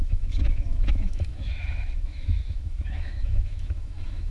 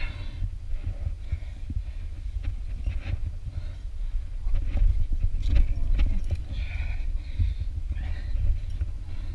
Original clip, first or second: second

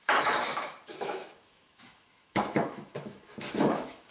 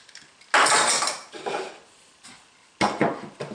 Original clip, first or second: second